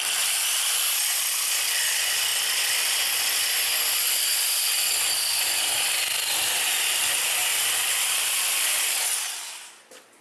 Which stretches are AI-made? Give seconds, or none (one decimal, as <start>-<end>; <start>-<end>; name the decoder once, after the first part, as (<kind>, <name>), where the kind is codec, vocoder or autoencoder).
0.0-2.3 (vocoder, BigVGAN v2); 5.2-10.2